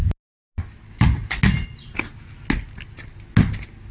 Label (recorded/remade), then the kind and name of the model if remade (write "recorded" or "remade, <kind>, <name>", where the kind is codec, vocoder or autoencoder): recorded